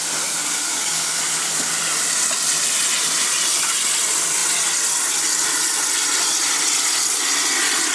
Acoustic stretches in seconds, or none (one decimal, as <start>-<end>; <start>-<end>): 0.0-0.4; 1.7-7.9